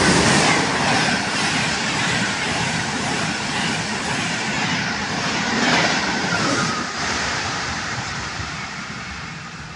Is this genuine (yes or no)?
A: no